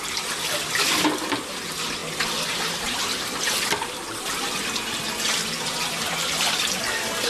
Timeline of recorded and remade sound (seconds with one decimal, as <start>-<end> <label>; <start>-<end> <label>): 0.0-7.3 recorded